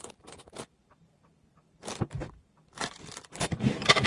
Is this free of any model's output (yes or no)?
no